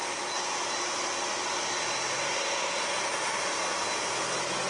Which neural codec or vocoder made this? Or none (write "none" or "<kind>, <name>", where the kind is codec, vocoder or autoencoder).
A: none